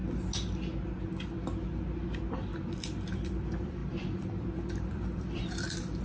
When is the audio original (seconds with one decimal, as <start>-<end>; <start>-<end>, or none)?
0.0-3.1